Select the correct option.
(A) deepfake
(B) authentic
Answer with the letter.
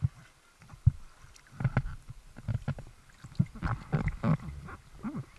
B